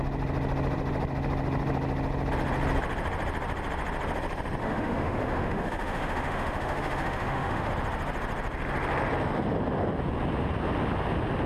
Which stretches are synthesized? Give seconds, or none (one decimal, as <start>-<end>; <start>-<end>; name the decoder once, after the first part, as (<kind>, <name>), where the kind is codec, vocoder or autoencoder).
4.6-7.7 (autoencoder, DAC-VAE)